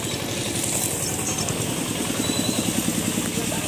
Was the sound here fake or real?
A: real